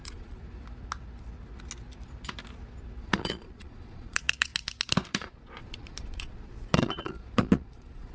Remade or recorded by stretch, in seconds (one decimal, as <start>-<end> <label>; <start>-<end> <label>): 0.0-0.4 remade; 0.4-3.0 recorded; 3.0-4.5 remade; 4.5-5.1 recorded; 5.1-8.1 remade